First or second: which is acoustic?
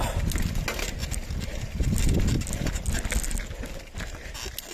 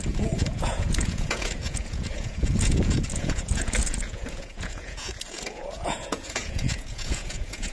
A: first